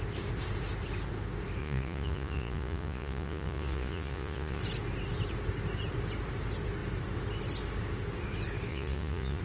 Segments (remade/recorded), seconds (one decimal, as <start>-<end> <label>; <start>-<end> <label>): 0.0-1.6 recorded; 1.6-4.6 remade; 4.6-8.7 recorded; 8.7-9.4 remade